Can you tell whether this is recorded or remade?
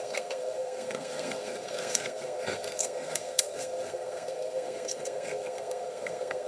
remade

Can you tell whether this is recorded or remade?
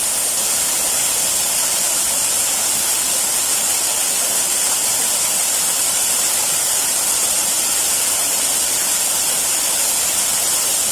recorded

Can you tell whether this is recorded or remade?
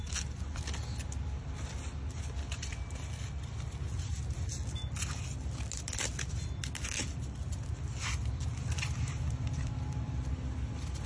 recorded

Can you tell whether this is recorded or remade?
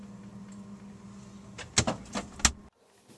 recorded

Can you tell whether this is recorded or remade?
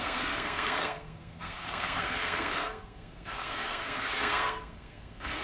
remade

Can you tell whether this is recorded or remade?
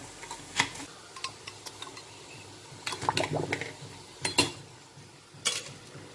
recorded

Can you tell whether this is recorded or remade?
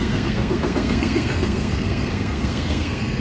remade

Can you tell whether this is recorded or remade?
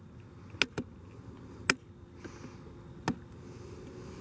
recorded